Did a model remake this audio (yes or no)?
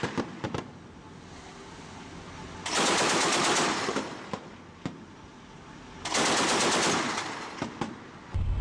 no